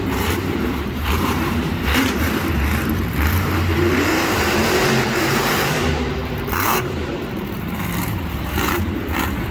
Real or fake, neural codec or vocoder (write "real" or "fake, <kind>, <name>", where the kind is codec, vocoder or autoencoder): fake, vocoder, BigVGAN v2